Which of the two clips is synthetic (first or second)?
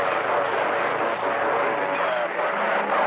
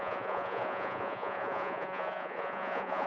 second